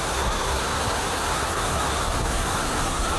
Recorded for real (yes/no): no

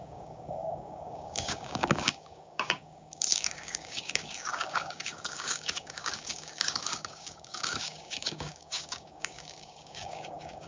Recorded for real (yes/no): no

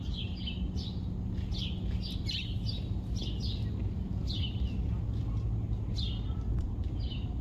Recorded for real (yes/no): yes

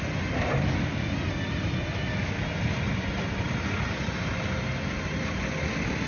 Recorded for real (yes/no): yes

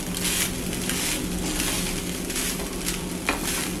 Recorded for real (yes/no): yes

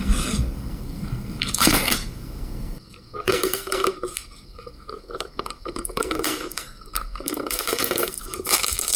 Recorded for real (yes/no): no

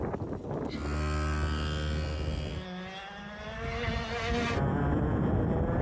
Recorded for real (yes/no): yes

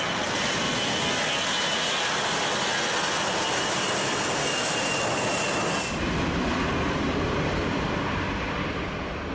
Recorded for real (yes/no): yes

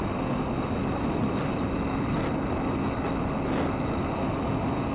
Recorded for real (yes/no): yes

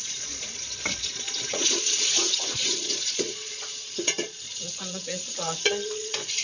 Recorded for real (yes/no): no